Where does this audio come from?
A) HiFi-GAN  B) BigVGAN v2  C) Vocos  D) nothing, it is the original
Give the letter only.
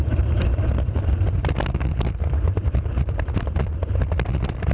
B